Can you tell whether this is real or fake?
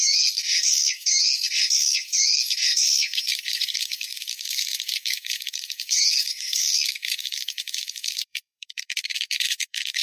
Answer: fake